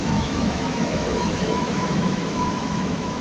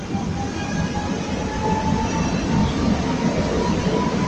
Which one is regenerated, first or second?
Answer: first